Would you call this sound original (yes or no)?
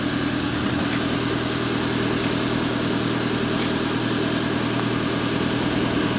yes